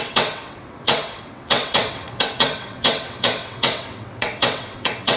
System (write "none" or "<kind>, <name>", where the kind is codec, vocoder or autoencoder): vocoder, WaveNeXt